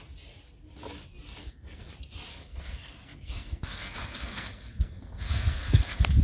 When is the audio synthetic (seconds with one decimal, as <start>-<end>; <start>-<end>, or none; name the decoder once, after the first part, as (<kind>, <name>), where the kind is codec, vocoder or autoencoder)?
1.4-1.9 (codec, SNAC); 2.3-6.2